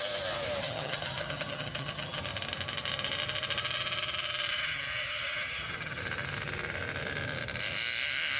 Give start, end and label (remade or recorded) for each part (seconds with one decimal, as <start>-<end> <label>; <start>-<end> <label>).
0.0-0.6 recorded; 0.6-2.2 remade; 2.2-4.5 recorded; 4.5-6.0 remade; 6.0-8.4 recorded